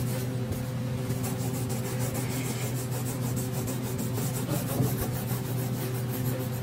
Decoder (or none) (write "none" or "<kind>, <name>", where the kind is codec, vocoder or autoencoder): none